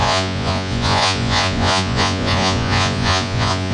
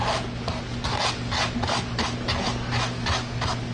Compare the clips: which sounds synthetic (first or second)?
first